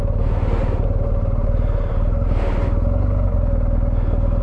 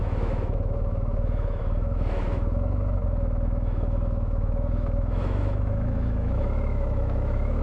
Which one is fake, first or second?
second